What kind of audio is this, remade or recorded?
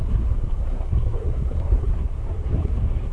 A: remade